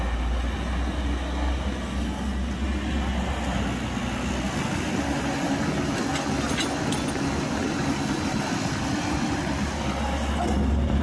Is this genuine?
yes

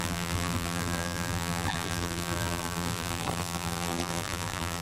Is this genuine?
no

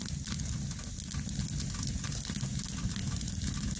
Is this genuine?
yes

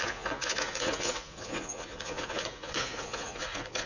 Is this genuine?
no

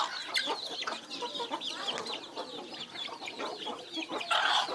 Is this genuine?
yes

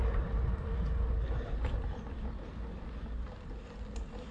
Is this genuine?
yes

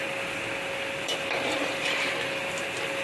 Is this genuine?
yes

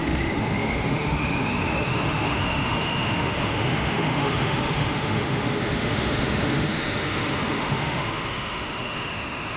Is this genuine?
no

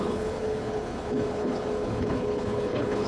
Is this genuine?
no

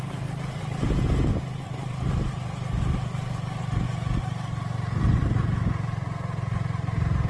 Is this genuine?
yes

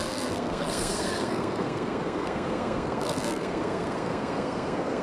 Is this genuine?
no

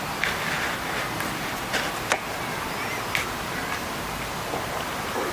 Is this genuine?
yes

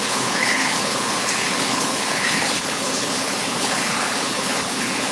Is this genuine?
no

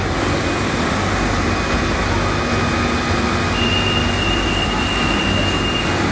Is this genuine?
yes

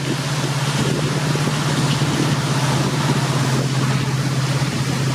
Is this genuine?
yes